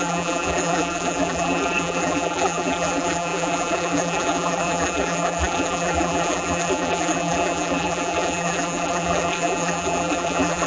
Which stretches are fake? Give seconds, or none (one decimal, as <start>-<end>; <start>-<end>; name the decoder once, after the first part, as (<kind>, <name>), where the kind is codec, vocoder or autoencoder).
0.0-10.7 (vocoder, BigVGAN v2)